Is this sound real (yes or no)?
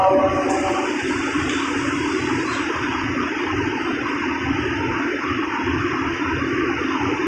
yes